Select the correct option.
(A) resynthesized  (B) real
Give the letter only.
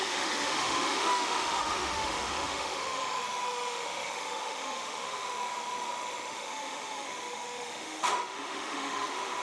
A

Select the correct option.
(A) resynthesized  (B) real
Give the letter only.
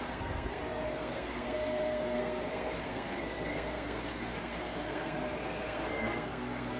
A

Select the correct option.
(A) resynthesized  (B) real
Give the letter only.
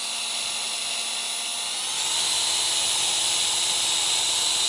B